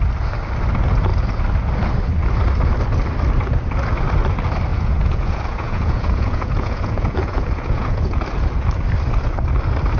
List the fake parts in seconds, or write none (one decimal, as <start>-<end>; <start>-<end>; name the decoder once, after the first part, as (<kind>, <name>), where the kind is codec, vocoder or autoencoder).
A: 4.7-8.2 (vocoder, Vocos)